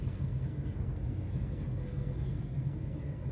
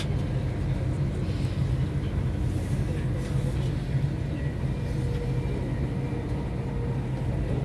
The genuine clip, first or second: second